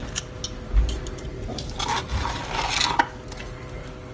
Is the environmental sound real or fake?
real